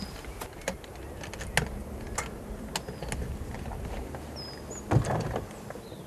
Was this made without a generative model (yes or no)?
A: yes